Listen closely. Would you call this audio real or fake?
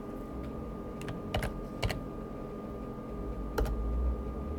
real